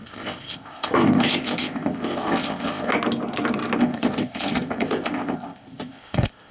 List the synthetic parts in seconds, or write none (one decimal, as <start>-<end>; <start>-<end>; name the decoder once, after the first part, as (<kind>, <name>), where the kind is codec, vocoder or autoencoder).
0.0-2.9 (codec, ZipCodec); 3.8-6.5